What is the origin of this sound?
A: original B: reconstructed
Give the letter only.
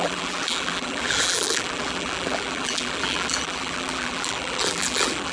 B